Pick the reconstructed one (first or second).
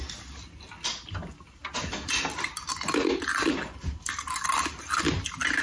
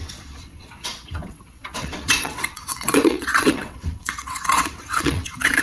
second